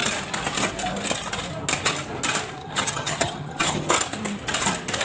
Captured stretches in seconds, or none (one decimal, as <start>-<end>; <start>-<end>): 0.0-2.6; 3.9-5.0